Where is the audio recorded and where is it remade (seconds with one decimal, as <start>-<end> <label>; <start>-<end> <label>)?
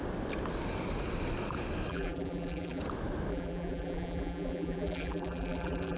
0.0-1.9 recorded; 1.9-2.8 remade; 2.8-3.3 recorded; 3.3-6.0 remade